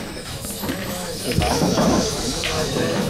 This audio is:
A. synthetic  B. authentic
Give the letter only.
A